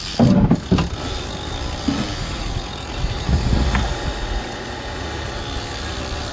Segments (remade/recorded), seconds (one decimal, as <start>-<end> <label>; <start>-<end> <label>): 0.0-2.2 recorded; 2.2-5.4 remade; 5.4-6.3 recorded